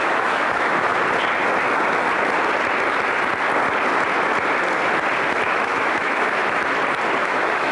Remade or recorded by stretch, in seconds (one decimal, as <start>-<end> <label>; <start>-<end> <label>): 0.0-0.9 remade; 0.9-5.5 recorded; 5.5-6.4 remade; 6.4-7.2 recorded; 7.2-7.7 remade